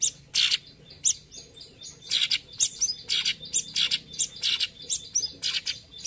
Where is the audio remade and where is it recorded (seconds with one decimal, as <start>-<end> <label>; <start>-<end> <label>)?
0.0-6.1 recorded